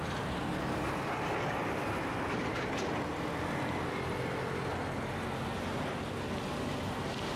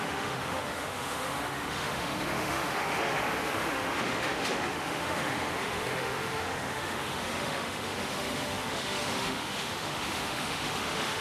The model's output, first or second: second